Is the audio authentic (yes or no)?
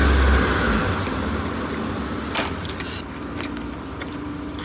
yes